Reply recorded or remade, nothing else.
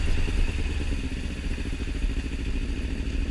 recorded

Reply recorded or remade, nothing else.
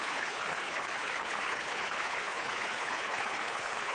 remade